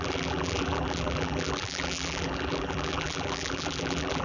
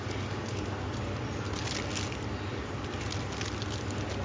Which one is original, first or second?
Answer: second